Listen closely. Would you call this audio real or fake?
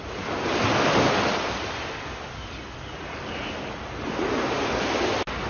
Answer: real